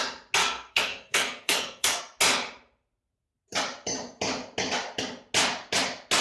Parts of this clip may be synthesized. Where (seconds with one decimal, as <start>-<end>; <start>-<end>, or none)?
0.4-2.0

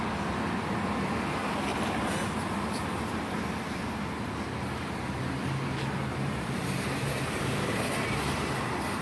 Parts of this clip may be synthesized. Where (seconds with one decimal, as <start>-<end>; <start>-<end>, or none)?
1.7-2.3; 6.1-7.8

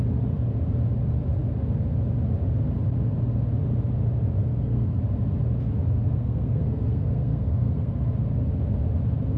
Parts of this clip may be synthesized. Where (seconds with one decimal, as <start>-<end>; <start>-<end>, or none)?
4.4-5.0; 6.0-7.9

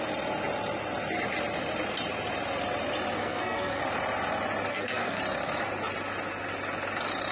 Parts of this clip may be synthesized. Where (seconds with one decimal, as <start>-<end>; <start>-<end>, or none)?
3.2-3.8; 4.7-5.2

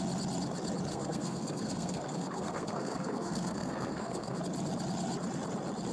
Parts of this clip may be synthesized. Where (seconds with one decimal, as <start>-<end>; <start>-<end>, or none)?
0.9-4.4